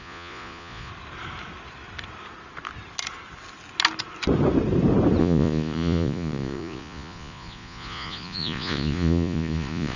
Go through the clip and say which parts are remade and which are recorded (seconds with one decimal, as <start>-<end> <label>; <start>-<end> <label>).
0.0-0.9 remade; 0.9-5.2 recorded; 5.2-10.0 remade